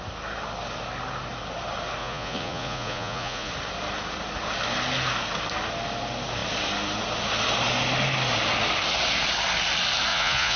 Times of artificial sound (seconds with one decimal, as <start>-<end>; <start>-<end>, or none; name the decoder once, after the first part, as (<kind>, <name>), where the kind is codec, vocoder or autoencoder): 2.0-3.5 (vocoder, Vocos); 10.1-10.6